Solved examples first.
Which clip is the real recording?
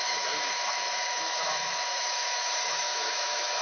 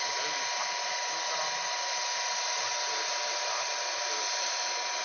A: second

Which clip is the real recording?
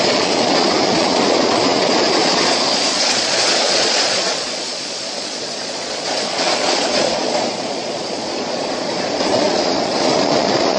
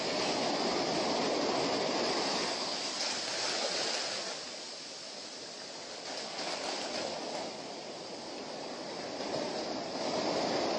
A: second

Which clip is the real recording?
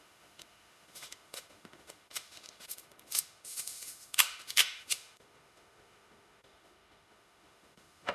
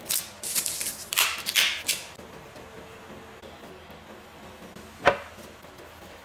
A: second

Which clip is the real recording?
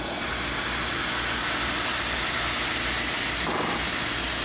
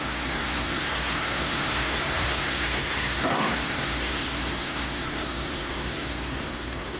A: first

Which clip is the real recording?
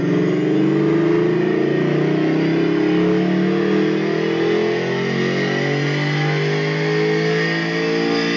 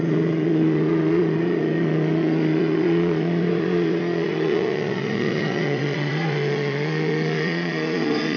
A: first